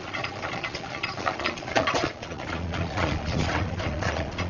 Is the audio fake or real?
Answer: fake